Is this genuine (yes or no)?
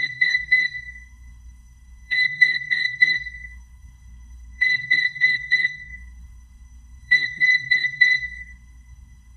no